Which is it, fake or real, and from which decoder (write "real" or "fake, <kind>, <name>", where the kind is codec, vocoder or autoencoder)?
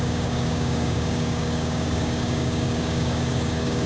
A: fake, codec, DAC